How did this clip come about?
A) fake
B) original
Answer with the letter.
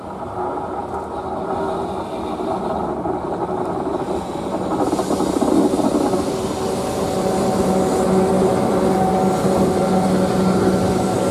B